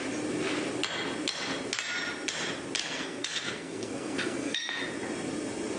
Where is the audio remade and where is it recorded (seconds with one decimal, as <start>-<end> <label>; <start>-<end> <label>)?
0.0-2.8 recorded; 2.8-4.8 remade; 4.8-5.8 recorded

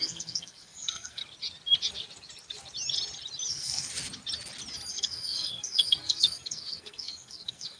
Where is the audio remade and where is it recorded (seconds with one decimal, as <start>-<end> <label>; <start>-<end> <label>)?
0.0-1.2 remade; 1.2-3.5 recorded; 3.5-3.9 remade; 3.9-4.9 recorded; 4.9-7.8 remade